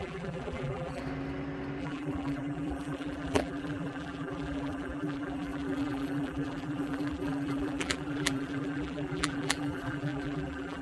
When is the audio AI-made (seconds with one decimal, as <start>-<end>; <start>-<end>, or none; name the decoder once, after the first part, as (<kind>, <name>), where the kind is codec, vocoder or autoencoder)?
0.0-1.0 (vocoder, BigVGAN v2); 1.8-10.8

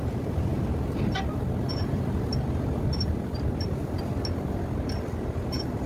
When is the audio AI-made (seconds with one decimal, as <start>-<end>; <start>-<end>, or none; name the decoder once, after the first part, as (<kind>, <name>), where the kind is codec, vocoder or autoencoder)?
0.0-2.3 (vocoder, BigVGAN v2); 5.1-5.9